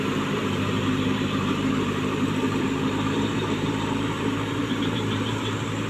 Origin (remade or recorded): remade